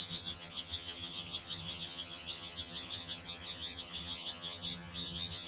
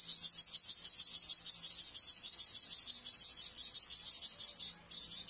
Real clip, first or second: second